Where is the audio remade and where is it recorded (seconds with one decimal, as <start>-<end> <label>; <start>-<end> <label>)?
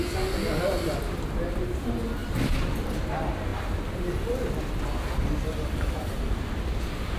0.0-2.2 recorded; 2.2-3.1 remade; 3.1-7.2 recorded